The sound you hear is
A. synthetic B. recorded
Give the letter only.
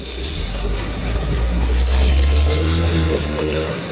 A